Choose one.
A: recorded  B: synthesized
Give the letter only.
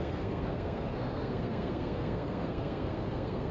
B